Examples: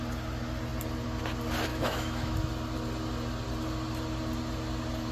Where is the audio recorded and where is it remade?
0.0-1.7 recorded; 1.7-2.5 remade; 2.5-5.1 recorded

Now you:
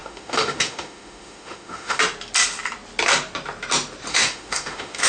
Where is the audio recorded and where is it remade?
0.0-2.0 remade; 2.0-4.1 recorded; 4.1-5.1 remade

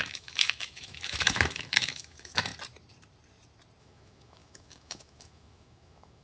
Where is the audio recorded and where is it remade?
0.0-2.5 remade; 2.5-3.8 recorded; 3.8-6.2 remade

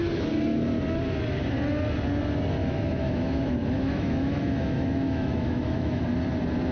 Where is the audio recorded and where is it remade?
0.0-2.6 recorded; 2.6-6.0 remade; 6.0-6.7 recorded

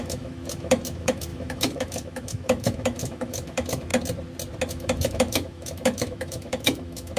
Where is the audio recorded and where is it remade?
0.0-3.9 remade; 3.9-4.7 recorded; 4.7-7.2 remade